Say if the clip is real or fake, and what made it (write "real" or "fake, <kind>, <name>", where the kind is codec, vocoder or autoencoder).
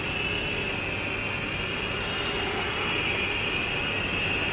real